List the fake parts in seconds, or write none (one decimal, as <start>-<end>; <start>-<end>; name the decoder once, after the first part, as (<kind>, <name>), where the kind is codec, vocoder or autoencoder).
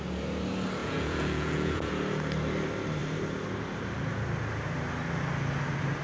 0.8-1.9 (vocoder, Vocos)